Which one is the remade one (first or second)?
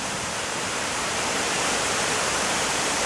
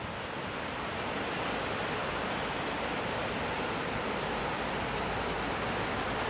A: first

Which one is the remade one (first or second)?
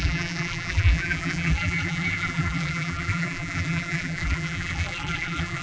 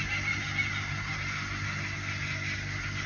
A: first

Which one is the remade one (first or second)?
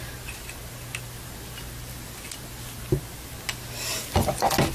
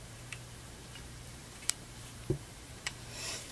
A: second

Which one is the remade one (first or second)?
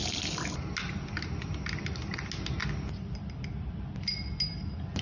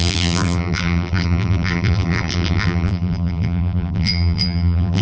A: second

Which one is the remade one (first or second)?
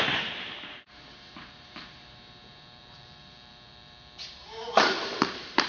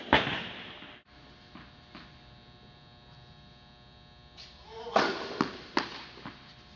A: first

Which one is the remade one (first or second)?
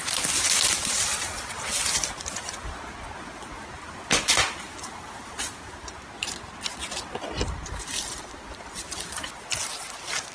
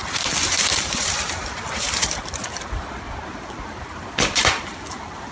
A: second